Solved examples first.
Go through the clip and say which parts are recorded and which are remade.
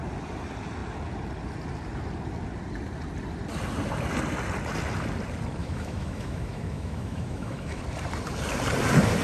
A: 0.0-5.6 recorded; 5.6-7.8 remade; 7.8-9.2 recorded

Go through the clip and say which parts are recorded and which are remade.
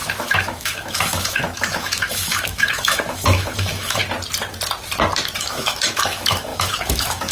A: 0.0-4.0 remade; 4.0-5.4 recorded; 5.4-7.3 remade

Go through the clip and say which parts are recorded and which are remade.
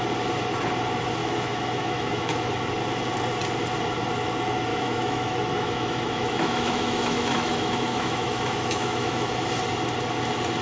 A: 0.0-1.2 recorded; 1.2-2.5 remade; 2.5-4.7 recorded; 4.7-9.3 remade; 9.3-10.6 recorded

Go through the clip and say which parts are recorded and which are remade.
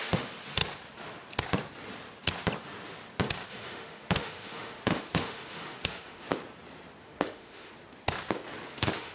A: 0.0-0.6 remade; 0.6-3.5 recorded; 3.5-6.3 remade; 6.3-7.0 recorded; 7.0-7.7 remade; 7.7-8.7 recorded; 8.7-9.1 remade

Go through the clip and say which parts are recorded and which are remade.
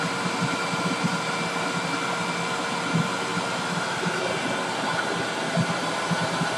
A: 0.0-6.6 recorded